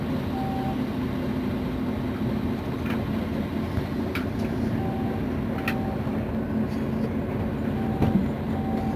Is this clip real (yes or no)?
yes